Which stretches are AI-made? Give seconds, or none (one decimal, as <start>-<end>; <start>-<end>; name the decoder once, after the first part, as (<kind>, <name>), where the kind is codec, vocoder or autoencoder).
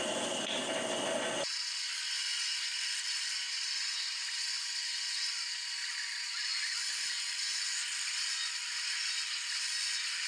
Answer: none